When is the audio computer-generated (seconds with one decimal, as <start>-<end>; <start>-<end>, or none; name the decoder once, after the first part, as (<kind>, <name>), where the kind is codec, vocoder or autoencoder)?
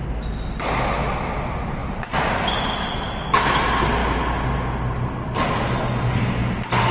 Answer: 1.8-2.7 (vocoder, BigVGAN v2)